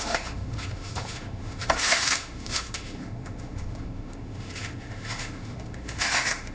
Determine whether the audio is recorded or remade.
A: remade